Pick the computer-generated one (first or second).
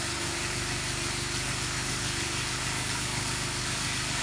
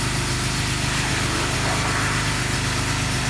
first